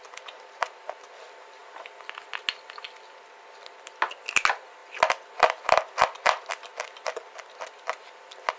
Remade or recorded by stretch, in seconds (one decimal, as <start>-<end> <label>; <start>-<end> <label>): 0.0-8.6 recorded